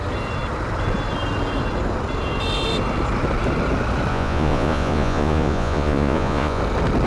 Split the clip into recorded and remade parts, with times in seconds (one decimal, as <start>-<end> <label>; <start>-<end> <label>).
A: 0.0-4.1 recorded; 4.1-6.6 remade; 6.6-7.1 recorded